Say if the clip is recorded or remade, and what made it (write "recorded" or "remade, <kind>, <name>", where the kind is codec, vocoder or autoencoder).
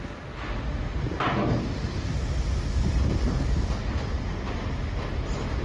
recorded